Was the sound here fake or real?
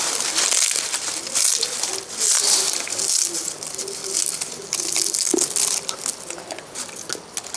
real